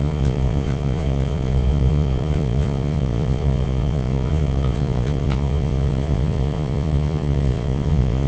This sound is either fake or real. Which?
fake